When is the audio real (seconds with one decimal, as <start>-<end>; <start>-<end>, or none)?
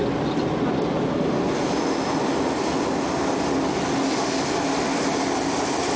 0.0-6.0